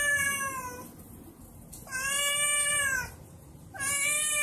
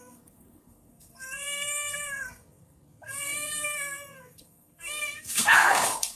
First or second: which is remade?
second